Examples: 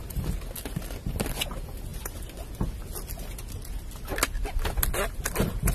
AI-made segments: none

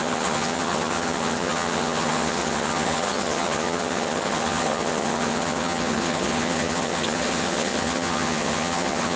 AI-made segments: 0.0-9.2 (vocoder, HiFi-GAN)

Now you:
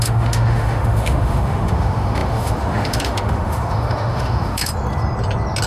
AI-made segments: 0.0-4.7 (autoencoder, DAC-VAE)

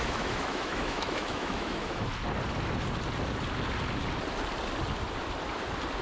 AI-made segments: 0.0-2.1 (autoencoder, DAC-VAE)